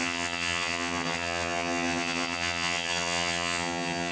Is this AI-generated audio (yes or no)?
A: yes